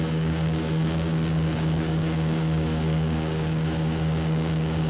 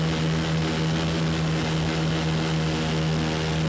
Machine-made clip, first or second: first